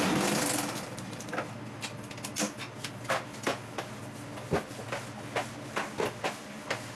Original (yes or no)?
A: yes